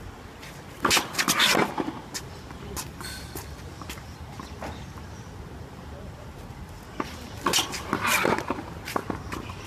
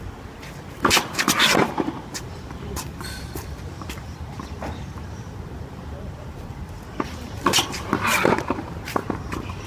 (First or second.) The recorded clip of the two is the first